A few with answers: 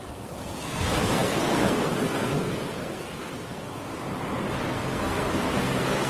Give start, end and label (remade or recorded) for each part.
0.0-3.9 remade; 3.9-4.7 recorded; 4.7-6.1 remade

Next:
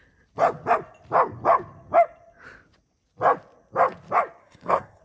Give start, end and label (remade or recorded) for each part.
0.0-4.4 recorded; 4.4-5.0 remade

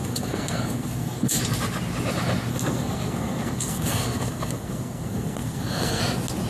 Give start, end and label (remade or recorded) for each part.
0.0-1.4 remade; 1.4-2.5 recorded; 2.5-6.0 remade; 6.0-6.5 recorded

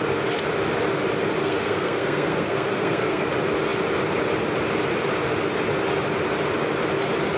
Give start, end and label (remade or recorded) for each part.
0.0-1.4 recorded; 1.4-3.3 remade; 3.3-7.4 recorded

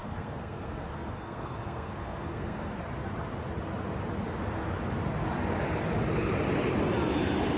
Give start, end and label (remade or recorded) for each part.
0.0-2.8 remade; 2.8-7.6 recorded

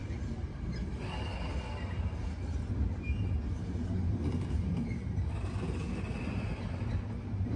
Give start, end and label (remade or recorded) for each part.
0.0-7.6 recorded